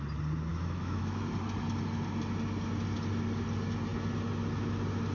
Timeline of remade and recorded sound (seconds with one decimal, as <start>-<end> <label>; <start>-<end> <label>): 0.0-0.5 recorded; 0.5-1.3 remade; 1.3-5.1 recorded